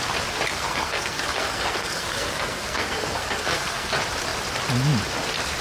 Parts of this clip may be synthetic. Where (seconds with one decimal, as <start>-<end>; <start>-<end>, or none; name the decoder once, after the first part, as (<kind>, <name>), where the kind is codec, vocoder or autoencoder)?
0.5-3.9 (codec, SNAC)